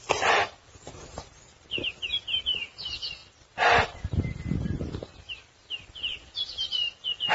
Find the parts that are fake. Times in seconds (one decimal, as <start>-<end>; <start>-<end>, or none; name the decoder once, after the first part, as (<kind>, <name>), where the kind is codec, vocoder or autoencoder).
none